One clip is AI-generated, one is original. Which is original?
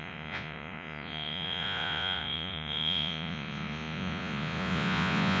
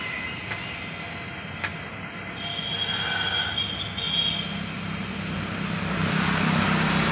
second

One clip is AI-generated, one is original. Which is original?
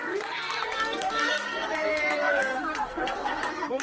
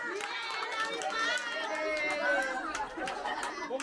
second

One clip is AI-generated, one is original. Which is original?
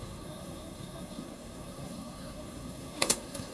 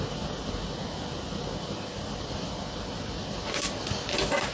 second